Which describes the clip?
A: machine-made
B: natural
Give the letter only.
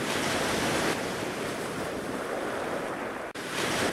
B